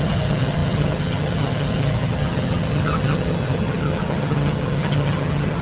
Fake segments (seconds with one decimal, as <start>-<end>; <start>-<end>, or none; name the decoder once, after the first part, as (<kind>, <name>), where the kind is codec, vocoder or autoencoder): 0.0-5.6 (vocoder, HiFi-GAN)